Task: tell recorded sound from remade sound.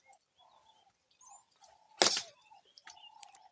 recorded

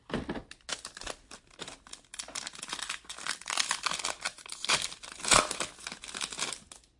recorded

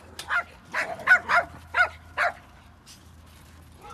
recorded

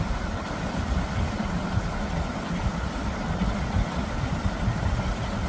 recorded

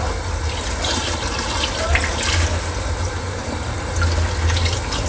recorded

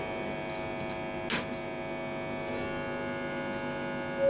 recorded